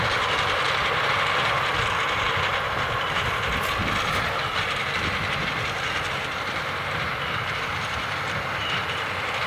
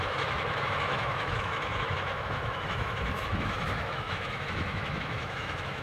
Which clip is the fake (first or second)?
second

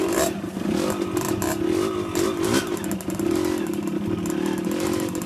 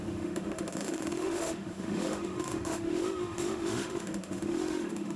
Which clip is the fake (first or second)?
second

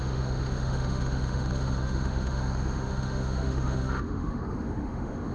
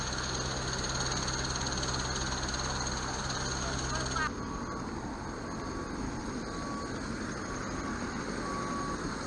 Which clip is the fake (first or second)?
first